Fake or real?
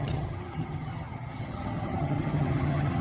fake